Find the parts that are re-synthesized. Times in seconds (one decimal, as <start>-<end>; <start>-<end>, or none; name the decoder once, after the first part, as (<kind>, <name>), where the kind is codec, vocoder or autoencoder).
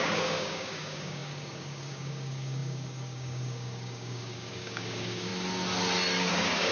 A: 0.0-5.3 (codec, DAC); 6.3-6.7